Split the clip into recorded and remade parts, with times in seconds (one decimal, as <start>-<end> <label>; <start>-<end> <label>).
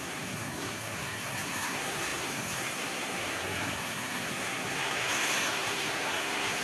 0.0-6.6 remade